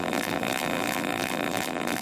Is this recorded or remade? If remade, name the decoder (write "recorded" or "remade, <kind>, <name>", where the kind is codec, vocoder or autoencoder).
remade, vocoder, BigVGAN v2